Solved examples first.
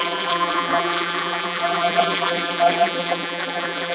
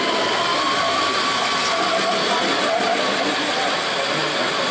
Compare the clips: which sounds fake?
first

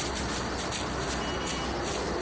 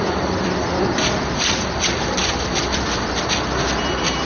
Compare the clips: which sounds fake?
second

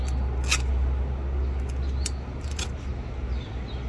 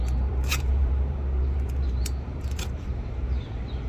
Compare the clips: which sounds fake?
second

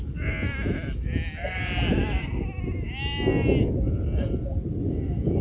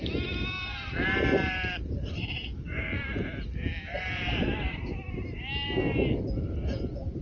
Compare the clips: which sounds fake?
second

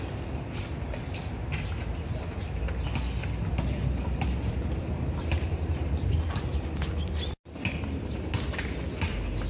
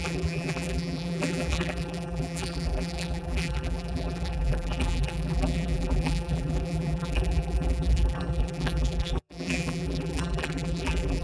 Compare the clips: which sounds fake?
second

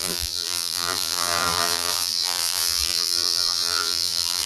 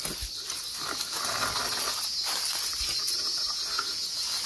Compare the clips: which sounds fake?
first